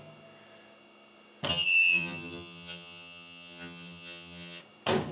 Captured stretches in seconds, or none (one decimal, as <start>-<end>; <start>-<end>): 0.0-1.5; 4.6-5.1